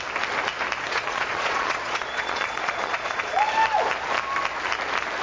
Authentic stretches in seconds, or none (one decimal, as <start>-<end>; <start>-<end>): 0.0-0.9; 3.4-5.2